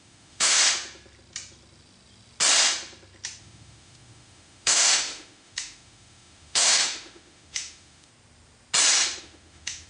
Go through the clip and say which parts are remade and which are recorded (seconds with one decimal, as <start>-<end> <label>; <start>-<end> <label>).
0.0-0.6 remade; 0.6-3.4 recorded; 3.4-8.1 remade; 8.1-9.2 recorded; 9.2-9.9 remade